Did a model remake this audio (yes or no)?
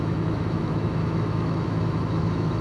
yes